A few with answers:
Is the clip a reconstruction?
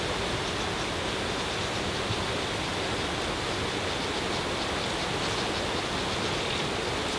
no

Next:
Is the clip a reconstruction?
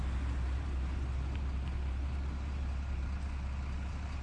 no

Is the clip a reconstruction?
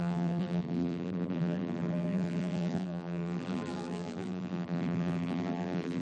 yes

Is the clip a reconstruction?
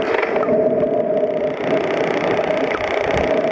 no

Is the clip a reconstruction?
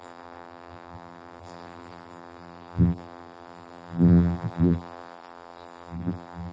yes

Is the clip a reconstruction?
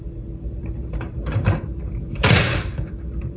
yes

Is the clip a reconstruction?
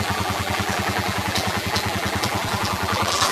yes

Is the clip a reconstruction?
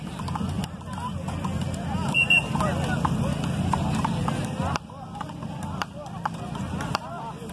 no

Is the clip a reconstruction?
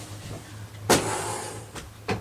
no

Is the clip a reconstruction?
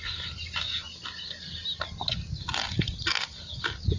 no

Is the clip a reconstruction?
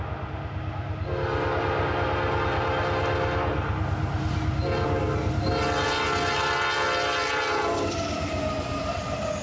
no